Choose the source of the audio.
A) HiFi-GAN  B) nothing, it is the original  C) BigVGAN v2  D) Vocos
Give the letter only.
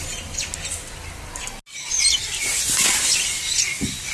B